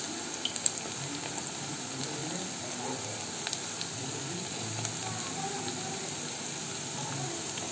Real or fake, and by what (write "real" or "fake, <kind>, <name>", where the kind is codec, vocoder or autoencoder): real